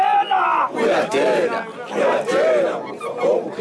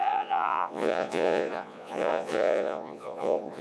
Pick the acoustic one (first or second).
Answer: first